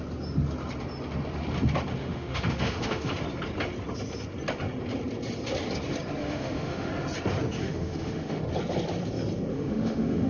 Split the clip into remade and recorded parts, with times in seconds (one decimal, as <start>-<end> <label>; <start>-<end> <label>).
0.0-2.0 recorded; 2.0-3.1 remade; 3.1-6.2 recorded; 6.2-6.9 remade; 6.9-7.6 recorded; 7.6-8.4 remade; 8.4-9.5 recorded; 9.5-10.3 remade